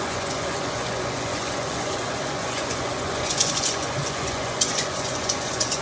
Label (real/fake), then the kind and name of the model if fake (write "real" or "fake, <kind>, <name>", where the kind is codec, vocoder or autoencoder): fake, vocoder, Vocos